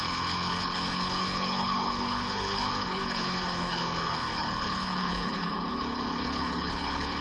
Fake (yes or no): yes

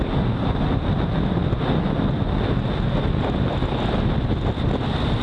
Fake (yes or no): no